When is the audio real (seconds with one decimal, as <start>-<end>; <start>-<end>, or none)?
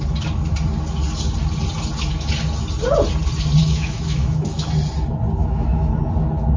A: 0.0-3.6; 4.7-5.4; 6.0-6.6